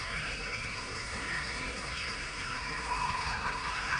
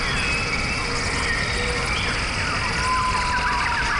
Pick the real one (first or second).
second